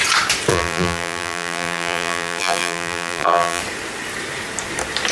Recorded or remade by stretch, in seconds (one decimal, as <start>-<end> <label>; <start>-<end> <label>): 0.0-0.5 recorded; 0.5-3.6 remade; 3.6-5.1 recorded